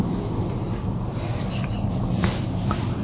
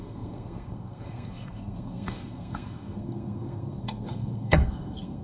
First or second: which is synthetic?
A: second